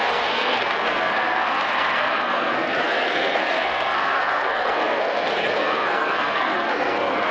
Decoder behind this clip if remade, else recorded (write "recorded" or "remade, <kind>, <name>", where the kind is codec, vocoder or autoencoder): remade, codec, SNAC